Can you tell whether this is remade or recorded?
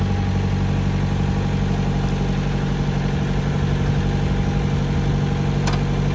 recorded